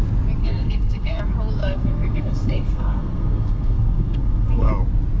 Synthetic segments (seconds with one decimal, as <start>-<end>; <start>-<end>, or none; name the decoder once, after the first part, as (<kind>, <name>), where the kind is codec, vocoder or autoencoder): 0.4-1.2 (codec, SNAC); 1.6-4.7